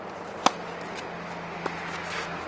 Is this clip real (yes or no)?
yes